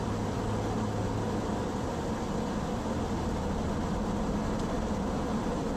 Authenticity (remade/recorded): recorded